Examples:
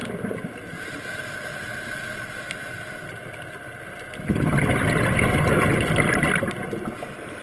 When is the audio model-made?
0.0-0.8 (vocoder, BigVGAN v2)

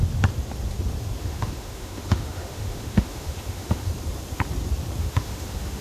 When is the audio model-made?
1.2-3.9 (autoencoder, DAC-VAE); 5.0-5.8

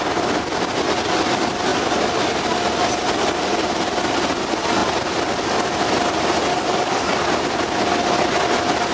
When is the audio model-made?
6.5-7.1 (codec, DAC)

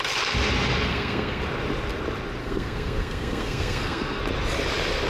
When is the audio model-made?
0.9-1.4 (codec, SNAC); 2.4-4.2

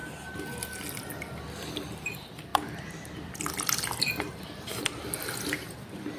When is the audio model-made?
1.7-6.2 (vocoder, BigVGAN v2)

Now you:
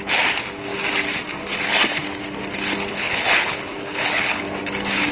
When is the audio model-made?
2.9-4.4 (codec, HILCodec)

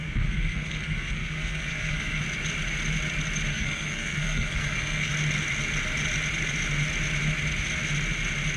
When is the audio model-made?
0.0-2.2 (codec, SNAC); 3.5-5.1